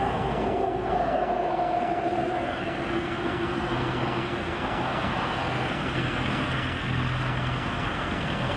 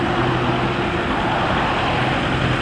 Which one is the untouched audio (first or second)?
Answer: second